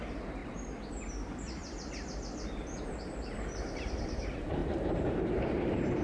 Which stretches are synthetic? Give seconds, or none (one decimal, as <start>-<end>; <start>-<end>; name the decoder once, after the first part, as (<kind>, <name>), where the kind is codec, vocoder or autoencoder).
0.0-1.6 (vocoder, BigVGAN v2); 2.8-6.0